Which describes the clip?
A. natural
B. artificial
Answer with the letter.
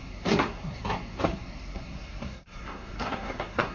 B